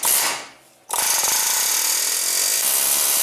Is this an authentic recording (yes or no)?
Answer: yes